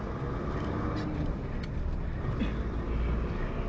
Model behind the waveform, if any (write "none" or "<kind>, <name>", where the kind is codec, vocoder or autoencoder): none